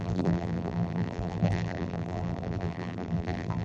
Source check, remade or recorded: remade